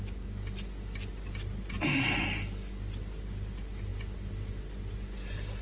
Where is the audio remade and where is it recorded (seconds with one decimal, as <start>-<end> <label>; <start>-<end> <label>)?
0.0-5.6 recorded

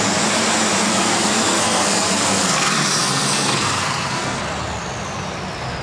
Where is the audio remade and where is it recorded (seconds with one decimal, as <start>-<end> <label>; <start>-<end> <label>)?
0.0-0.9 recorded; 0.9-4.4 remade; 4.4-5.8 recorded